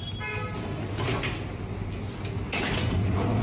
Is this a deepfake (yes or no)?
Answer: no